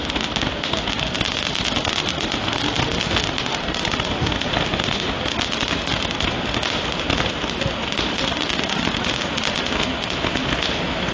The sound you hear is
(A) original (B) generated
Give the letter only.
A